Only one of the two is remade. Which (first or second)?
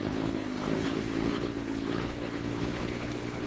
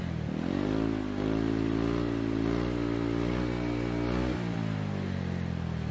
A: first